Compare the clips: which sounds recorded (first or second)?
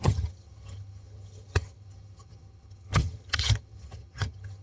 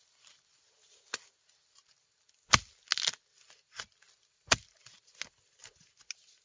second